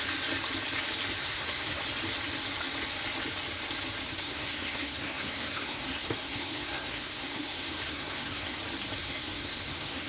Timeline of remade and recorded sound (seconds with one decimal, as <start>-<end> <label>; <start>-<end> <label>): 0.0-1.2 recorded; 1.2-1.8 remade; 1.8-4.2 recorded; 4.2-8.6 remade; 8.6-9.0 recorded; 9.0-10.1 remade